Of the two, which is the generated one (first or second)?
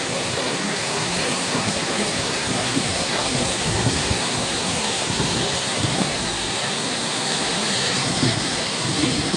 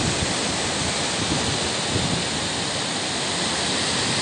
first